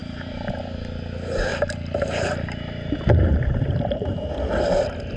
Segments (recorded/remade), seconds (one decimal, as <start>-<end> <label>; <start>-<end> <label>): 0.0-0.6 remade; 0.6-1.5 recorded; 1.5-4.2 remade; 4.2-5.2 recorded